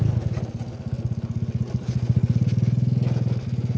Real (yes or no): yes